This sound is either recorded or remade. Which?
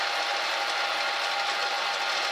recorded